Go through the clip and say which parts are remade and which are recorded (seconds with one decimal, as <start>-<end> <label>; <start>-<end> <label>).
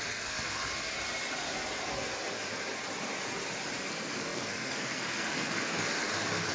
0.0-0.6 remade; 0.6-3.8 recorded; 3.8-6.5 remade